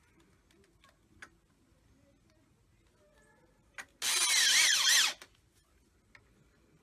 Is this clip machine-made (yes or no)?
no